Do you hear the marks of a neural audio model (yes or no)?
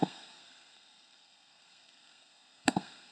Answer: yes